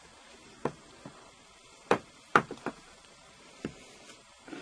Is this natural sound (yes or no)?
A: no